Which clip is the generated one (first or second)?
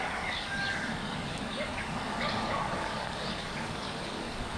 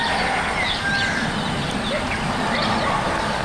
first